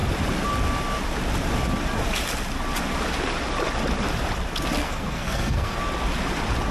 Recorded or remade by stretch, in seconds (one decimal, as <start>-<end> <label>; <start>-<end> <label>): 0.0-4.8 recorded; 4.8-5.8 remade; 5.8-6.7 recorded